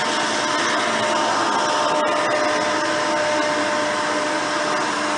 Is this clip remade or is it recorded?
recorded